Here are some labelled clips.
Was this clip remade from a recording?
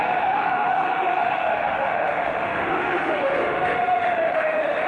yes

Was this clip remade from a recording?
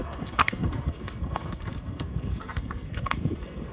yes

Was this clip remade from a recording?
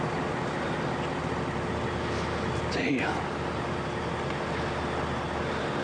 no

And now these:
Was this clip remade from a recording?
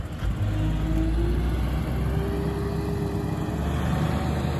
no